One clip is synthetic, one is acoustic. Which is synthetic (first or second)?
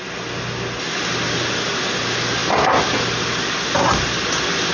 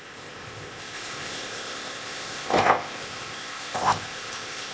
second